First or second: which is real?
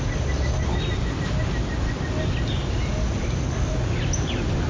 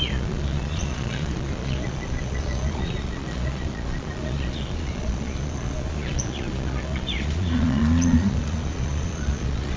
first